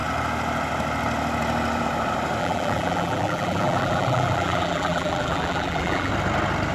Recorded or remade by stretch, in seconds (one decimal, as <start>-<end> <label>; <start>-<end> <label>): 0.0-2.4 recorded; 2.4-6.1 remade; 6.1-6.7 recorded

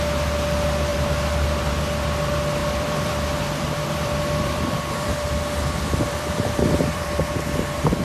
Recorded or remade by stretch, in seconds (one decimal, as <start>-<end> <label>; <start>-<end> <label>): 0.0-0.9 recorded; 0.9-1.7 remade; 1.7-2.6 recorded; 2.6-7.4 remade; 7.4-8.0 recorded

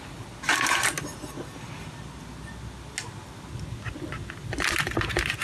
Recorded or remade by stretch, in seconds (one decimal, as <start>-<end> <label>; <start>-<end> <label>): 0.0-5.4 recorded

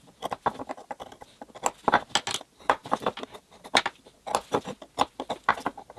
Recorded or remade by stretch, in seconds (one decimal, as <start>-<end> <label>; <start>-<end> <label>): 0.0-6.0 recorded

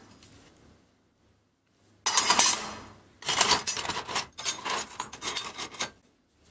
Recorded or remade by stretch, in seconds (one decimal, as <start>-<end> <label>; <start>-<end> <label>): 0.0-6.5 recorded

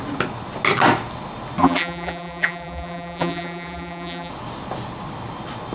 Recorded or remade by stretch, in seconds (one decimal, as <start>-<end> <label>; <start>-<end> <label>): 0.0-1.6 recorded; 1.6-4.3 remade; 4.3-5.7 recorded